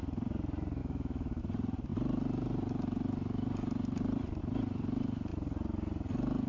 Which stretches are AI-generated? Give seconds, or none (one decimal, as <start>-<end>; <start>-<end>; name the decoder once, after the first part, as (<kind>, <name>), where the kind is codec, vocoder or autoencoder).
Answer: 0.8-1.4 (autoencoder, DAC-VAE)

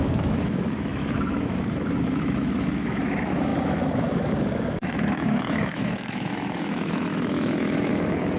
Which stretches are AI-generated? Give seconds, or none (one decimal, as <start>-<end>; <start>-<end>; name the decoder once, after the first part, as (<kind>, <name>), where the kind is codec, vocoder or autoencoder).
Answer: 0.0-8.4 (autoencoder, DAC-VAE)